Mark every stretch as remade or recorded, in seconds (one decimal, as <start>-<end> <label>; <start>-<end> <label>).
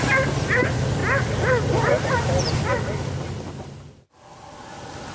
0.0-5.1 recorded